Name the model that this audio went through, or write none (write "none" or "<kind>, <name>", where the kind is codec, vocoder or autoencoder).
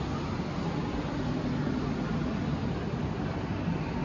none